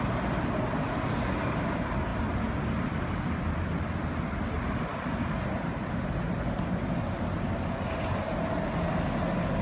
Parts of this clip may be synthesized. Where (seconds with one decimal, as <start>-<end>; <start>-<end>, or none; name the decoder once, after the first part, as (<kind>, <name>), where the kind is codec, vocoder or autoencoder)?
none